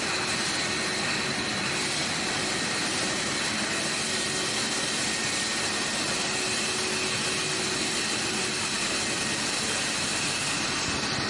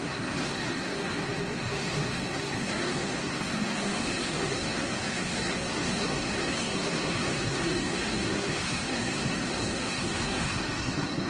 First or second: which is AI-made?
second